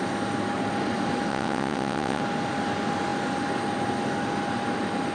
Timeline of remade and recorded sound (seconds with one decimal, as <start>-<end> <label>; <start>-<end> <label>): 0.0-1.3 recorded; 1.3-2.2 remade; 2.2-5.1 recorded